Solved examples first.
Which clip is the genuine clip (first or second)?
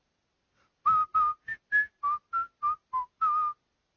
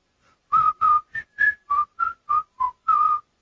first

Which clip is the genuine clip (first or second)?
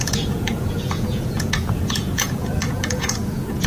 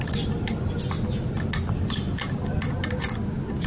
second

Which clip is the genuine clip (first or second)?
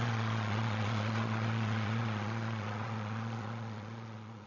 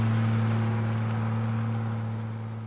second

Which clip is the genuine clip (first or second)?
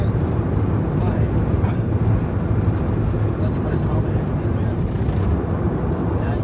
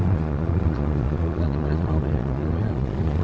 first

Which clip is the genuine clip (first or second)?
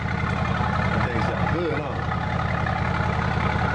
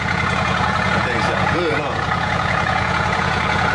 first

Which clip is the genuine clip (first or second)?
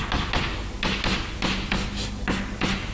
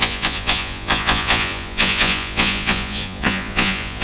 first